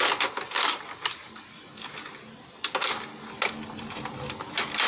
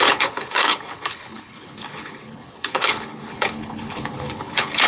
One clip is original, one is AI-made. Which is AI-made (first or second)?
second